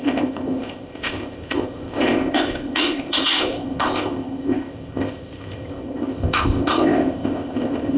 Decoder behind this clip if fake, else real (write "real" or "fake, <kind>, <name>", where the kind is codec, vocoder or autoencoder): fake, codec, ZipCodec